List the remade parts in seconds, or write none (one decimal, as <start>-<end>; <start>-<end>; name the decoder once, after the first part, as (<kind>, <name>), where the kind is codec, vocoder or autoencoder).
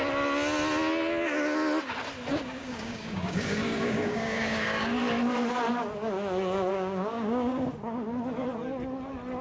2.3-4.9 (codec, DAC); 6.7-7.7